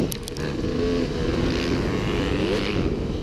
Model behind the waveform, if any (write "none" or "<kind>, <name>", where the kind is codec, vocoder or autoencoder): none